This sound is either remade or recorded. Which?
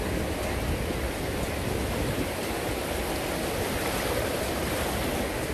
recorded